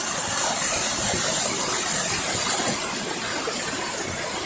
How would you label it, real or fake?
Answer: real